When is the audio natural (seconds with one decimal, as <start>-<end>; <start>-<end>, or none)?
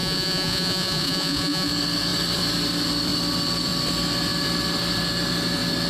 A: 1.7-5.9